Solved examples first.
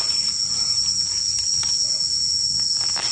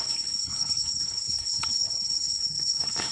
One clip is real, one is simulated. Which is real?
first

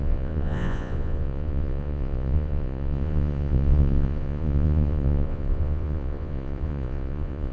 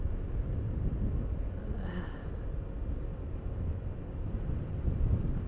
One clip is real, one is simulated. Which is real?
second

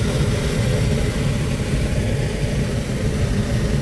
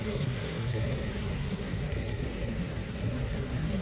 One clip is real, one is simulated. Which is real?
first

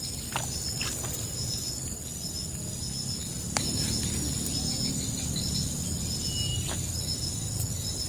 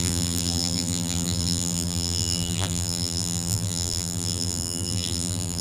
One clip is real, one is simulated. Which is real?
first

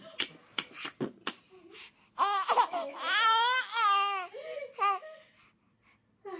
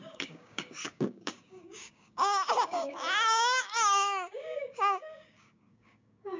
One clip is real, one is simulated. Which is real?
first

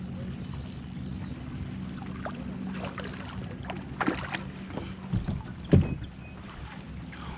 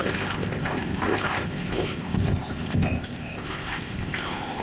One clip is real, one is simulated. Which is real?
first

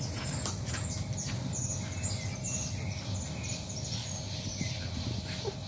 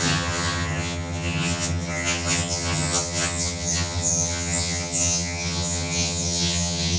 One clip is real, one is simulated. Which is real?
first